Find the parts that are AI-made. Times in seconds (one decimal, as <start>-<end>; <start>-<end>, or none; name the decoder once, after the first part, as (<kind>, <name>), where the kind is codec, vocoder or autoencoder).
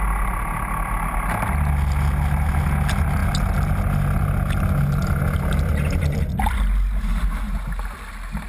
none